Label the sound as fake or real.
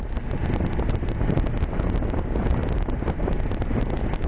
real